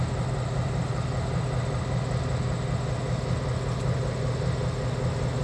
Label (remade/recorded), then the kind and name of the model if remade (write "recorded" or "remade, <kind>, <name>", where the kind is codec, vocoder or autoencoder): recorded